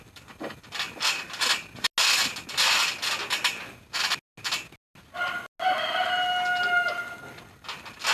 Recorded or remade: recorded